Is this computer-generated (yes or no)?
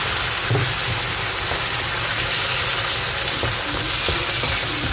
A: no